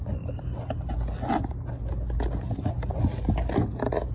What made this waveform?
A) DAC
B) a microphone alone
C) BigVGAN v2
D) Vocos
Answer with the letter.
B